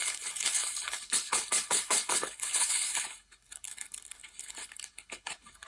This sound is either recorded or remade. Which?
remade